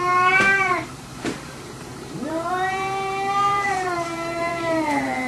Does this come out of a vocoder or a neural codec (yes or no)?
yes